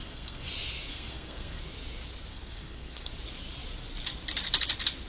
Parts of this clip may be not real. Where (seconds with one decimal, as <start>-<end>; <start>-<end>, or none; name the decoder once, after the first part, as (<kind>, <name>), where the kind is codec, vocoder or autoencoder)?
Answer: 0.0-0.5 (codec, SNAC); 0.9-1.6; 2.3-3.1